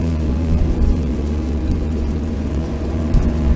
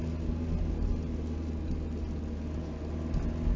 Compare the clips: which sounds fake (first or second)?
first